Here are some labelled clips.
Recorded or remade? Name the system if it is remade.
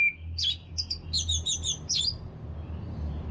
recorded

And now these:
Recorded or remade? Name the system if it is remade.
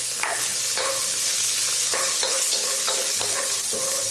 remade, codec, HILCodec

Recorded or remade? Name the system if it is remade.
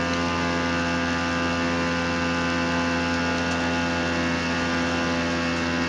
recorded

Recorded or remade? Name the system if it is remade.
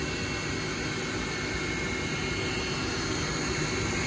recorded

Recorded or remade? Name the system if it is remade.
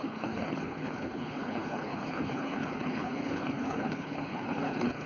remade, codec, HILCodec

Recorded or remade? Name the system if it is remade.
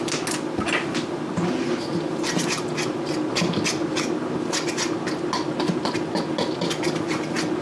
recorded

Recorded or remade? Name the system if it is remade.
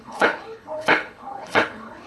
remade, codec, HILCodec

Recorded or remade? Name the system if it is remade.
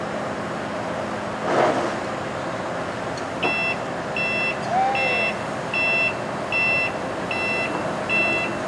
recorded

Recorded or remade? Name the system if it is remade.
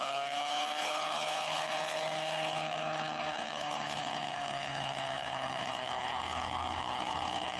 remade, codec, HILCodec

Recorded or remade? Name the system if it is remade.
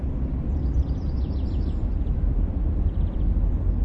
recorded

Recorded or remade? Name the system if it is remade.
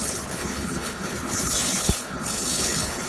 remade, codec, HILCodec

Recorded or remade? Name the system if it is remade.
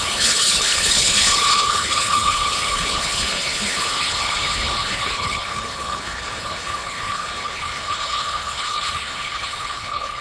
remade, codec, HILCodec